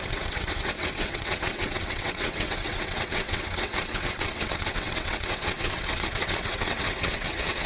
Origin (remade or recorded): remade